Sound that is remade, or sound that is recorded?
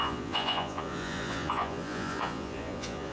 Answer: remade